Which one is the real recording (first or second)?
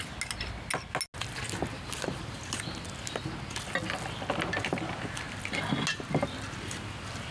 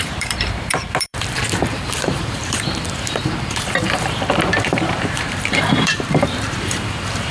first